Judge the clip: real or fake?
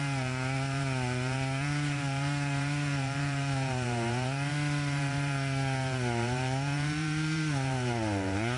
fake